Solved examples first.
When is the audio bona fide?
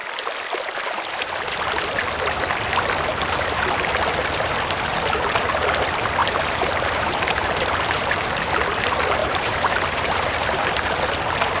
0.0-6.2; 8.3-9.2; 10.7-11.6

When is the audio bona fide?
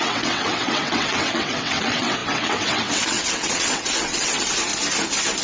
4.7-5.4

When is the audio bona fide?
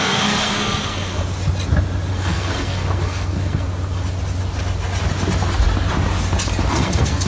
1.2-2.1; 3.7-6.7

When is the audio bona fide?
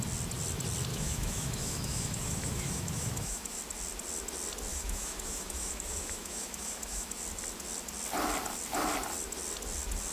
0.0-0.9; 3.6-4.7; 7.2-10.1